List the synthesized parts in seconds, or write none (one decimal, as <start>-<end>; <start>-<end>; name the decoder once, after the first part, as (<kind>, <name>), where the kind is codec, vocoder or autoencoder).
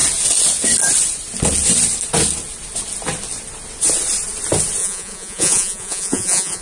4.8-6.6 (vocoder, Vocos)